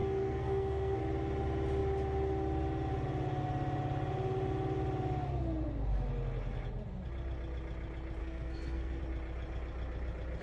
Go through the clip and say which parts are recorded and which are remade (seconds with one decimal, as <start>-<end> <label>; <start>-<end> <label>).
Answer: 0.0-1.0 remade; 1.0-8.2 recorded; 8.2-9.0 remade; 9.0-10.4 recorded